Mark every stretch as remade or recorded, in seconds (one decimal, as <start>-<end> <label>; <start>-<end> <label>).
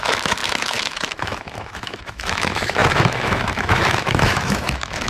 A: 0.0-5.1 remade